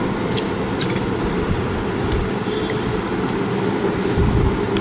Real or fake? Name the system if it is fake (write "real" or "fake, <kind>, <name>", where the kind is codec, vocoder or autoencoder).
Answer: real